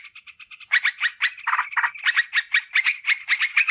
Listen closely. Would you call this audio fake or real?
real